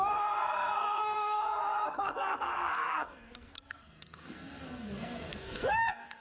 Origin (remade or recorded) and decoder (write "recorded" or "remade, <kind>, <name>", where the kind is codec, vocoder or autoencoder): remade, codec, SNAC